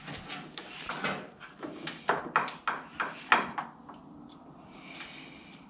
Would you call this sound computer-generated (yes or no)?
no